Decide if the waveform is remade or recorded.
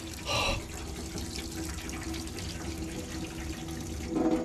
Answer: recorded